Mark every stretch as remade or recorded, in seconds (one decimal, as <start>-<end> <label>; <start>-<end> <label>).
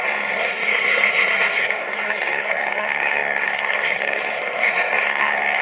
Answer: 0.0-5.6 remade